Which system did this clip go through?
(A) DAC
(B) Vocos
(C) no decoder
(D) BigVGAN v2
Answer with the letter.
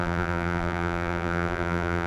D